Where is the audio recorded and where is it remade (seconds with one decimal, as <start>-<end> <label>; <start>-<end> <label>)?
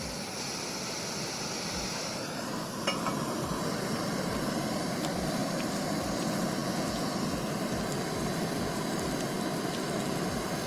0.0-6.6 recorded; 6.6-7.1 remade; 7.1-10.7 recorded